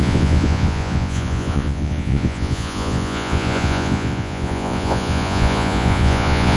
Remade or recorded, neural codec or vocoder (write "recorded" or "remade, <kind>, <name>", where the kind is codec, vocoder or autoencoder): remade, vocoder, Vocos